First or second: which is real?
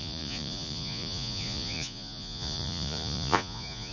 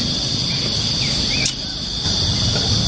second